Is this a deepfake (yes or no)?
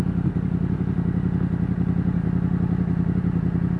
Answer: no